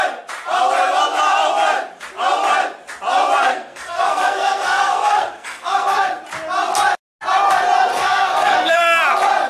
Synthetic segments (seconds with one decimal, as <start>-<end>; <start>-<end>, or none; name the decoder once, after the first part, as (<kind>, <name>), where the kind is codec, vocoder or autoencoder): 3.4-6.2 (codec, SNAC); 7.9-8.8